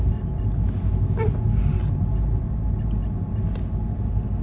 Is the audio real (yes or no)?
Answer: yes